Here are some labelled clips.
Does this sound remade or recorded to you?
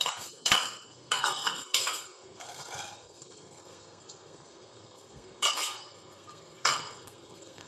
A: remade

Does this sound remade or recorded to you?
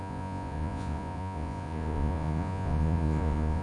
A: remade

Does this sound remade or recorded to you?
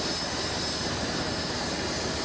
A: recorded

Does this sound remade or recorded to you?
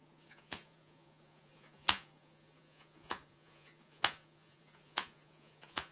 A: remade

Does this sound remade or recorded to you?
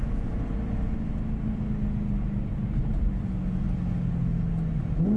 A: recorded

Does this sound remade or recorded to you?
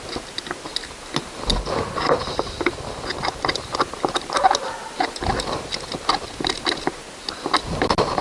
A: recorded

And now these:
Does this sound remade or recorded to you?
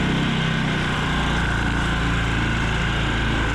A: recorded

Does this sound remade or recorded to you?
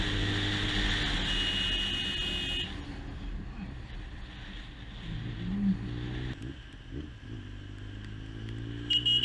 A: recorded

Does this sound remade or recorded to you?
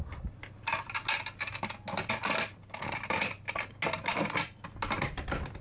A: recorded